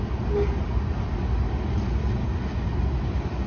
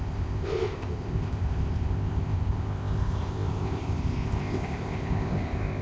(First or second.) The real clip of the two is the first